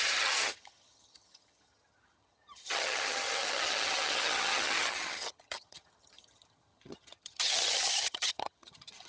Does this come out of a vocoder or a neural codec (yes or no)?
yes